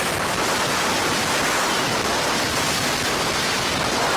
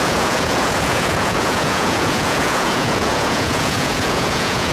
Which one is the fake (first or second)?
second